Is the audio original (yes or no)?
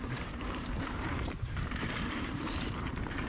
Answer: no